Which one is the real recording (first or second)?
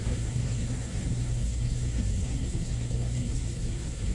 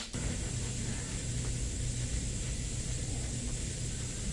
second